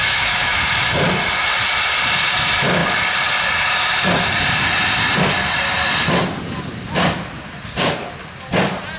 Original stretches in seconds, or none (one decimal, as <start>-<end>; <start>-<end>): 0.6-9.0